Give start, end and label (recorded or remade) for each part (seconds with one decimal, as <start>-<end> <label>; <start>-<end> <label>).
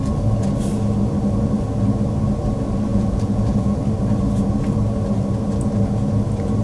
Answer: 0.0-2.9 recorded; 2.9-3.8 remade; 3.8-6.6 recorded